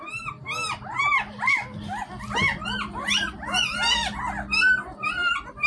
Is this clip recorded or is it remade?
recorded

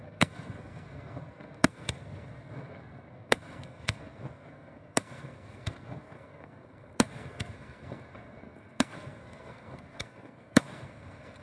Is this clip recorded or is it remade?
remade